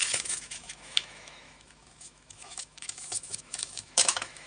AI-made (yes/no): yes